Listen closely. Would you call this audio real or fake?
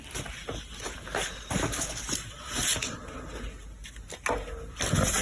real